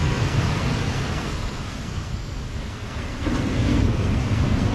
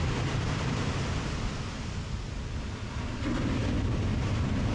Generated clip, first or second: first